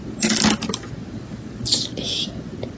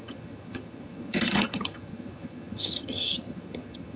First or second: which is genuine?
first